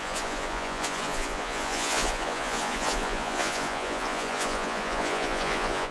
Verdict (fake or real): fake